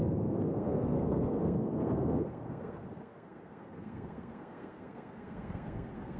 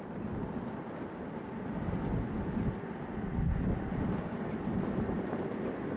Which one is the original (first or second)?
second